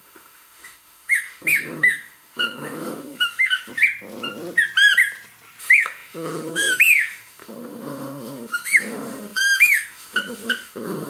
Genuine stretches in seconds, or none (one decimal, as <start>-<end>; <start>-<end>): 3.7-5.6